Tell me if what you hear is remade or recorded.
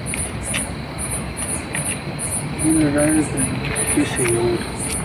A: recorded